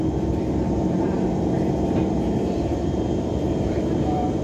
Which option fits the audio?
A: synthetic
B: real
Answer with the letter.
A